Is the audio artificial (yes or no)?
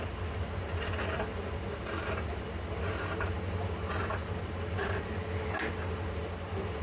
no